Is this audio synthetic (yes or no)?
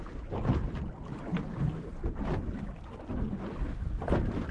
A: no